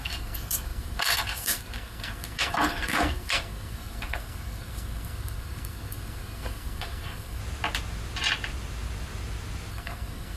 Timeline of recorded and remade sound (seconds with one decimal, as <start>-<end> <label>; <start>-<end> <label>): 0.0-7.4 remade; 7.4-9.7 recorded; 9.7-10.4 remade